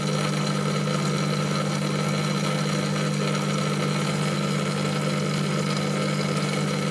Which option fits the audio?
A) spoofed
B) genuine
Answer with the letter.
B